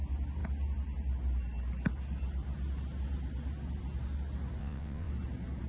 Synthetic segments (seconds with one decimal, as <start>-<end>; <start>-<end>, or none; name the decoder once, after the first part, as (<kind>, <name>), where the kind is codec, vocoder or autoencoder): 4.6-5.1 (vocoder, WaveNeXt)